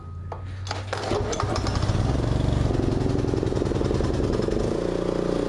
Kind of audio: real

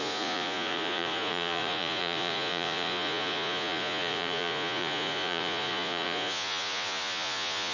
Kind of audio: fake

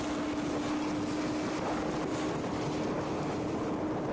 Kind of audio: real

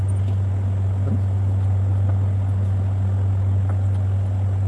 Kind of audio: real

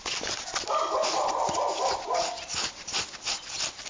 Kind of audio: real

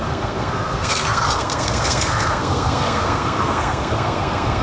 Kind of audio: fake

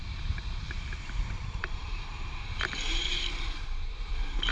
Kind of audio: fake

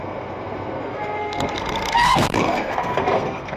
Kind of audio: fake